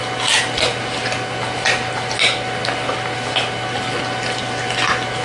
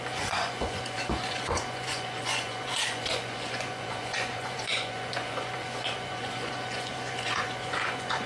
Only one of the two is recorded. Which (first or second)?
first